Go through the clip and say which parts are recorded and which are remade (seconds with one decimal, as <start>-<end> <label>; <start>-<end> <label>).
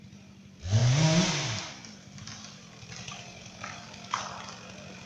0.0-3.1 recorded; 3.1-4.2 remade; 4.2-5.1 recorded